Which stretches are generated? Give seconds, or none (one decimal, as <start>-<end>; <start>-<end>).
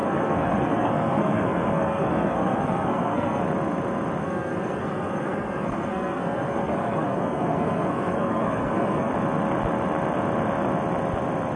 0.0-3.4; 4.2-9.1